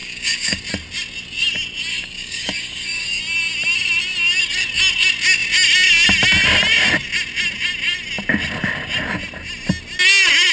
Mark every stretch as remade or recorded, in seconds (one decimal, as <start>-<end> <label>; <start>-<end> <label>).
0.0-0.6 remade; 0.6-1.9 recorded; 1.9-3.2 remade; 3.2-10.5 recorded